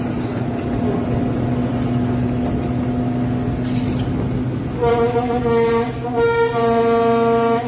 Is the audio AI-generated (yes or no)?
no